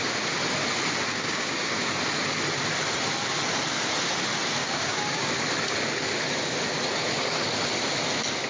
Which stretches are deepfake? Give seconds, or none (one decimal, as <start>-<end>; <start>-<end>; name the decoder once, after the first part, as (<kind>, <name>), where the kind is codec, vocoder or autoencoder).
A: 1.1-1.8 (codec, DAC); 4.6-5.3